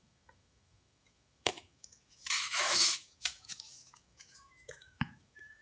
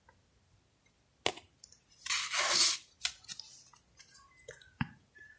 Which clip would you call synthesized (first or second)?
first